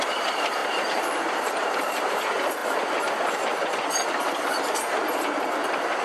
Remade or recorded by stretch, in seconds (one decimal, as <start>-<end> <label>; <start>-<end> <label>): 0.0-0.6 recorded; 0.6-2.2 remade; 2.2-6.0 recorded